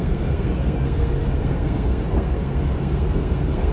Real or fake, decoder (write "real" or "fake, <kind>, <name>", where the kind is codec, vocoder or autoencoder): fake, codec, SNAC